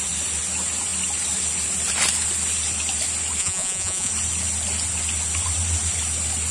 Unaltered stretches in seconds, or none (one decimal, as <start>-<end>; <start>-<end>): 0.0-3.4; 4.1-6.5